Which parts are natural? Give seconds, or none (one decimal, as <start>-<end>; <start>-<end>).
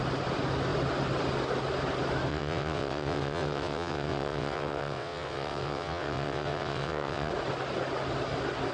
0.0-2.3; 7.3-8.7